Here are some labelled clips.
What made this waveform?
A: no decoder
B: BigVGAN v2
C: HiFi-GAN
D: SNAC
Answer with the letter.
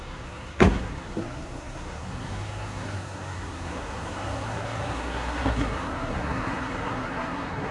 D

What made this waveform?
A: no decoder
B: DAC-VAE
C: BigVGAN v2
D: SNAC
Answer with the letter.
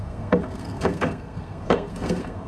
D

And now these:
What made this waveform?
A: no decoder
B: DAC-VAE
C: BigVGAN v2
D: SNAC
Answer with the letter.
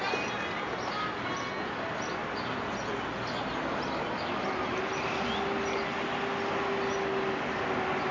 A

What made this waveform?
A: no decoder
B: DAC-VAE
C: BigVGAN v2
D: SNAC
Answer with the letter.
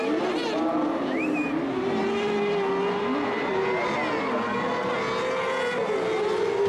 A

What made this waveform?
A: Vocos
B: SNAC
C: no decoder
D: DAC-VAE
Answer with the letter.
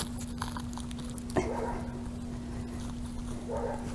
C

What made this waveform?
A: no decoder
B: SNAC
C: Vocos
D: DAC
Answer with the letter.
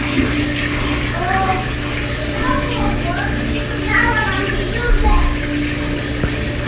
A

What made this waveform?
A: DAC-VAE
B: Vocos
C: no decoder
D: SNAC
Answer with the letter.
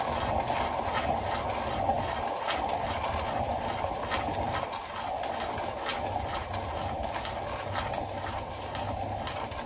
C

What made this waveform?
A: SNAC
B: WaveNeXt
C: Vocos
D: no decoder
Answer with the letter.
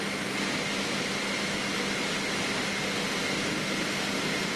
D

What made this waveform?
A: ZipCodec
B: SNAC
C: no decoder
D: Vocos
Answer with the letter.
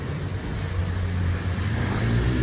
C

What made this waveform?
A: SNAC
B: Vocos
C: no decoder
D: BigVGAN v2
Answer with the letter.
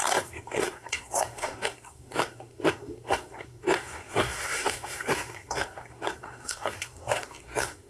A